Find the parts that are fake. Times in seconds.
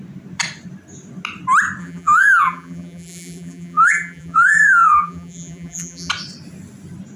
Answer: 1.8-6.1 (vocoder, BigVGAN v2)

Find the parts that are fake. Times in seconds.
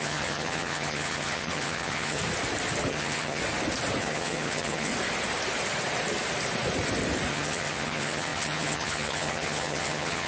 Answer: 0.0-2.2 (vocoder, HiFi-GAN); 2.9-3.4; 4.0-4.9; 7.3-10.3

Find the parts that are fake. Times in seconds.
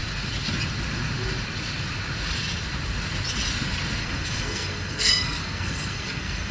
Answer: 4.0-6.5 (codec, SNAC)